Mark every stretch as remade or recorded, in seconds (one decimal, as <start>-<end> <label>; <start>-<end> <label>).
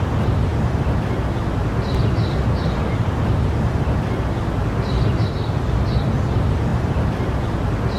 0.0-6.7 recorded; 6.7-7.4 remade; 7.4-8.0 recorded